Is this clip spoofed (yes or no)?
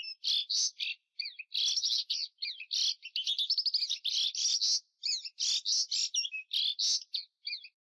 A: no